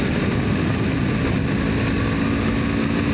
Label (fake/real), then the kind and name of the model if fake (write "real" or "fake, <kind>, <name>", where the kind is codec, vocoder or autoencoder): real